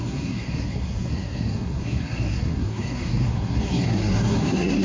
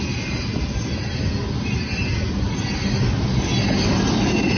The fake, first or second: first